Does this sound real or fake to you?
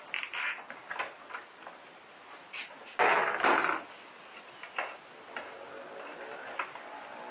real